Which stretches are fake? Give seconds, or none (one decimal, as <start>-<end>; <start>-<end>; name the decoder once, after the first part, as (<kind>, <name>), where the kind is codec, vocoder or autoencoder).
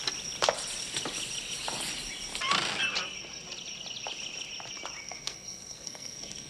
5.0-6.5 (codec, SNAC)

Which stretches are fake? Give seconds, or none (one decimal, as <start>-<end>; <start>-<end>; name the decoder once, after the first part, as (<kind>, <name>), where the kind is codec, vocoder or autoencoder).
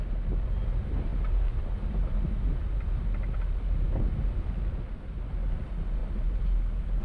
none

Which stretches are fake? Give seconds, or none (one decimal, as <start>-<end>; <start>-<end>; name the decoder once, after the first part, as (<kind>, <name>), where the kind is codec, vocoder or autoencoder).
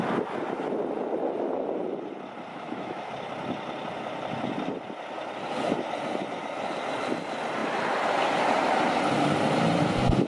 2.5-3.1 (autoencoder, DAC-VAE)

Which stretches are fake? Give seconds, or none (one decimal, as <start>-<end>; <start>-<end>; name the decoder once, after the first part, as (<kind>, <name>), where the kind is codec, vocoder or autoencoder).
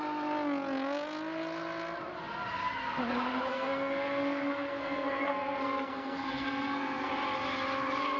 3.5-7.1 (codec, SNAC)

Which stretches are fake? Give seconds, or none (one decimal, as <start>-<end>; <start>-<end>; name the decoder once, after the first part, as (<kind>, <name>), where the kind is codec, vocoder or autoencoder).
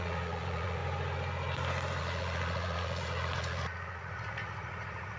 0.0-0.8 (vocoder, Vocos); 2.0-5.2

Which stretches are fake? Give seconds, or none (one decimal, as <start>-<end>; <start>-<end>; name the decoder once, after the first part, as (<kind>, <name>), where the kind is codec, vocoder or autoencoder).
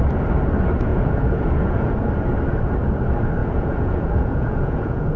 0.9-2.1 (vocoder, Vocos); 3.4-5.2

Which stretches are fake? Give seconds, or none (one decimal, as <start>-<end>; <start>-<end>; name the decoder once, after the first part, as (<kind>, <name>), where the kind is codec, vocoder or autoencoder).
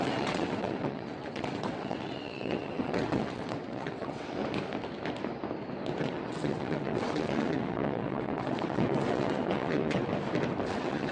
0.0-4.4 (vocoder, WaveNeXt); 6.0-10.1; 10.7-11.1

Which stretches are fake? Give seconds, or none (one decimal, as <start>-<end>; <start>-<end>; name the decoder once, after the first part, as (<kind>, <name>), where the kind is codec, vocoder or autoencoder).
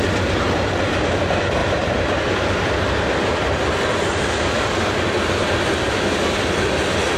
none